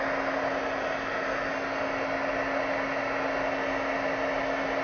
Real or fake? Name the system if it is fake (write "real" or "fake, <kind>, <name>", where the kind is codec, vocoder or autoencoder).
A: real